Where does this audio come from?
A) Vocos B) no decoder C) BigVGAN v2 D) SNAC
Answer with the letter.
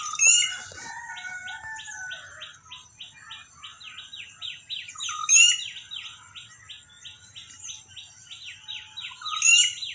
B